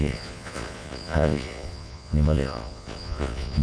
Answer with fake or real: fake